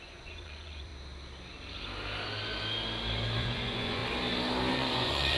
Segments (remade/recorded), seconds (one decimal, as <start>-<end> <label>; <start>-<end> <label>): 0.0-0.9 remade; 0.9-3.4 recorded; 3.4-4.0 remade; 4.0-4.7 recorded; 4.7-5.4 remade